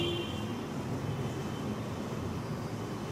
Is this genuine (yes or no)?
yes